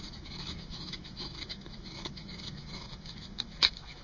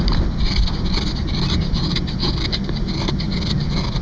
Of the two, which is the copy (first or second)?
first